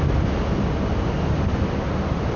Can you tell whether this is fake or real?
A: real